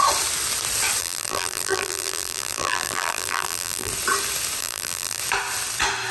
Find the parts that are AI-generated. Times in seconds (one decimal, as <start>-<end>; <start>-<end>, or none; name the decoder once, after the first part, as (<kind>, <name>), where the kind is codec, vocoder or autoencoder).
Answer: 1.0-3.9 (vocoder, BigVGAN v2); 4.6-5.2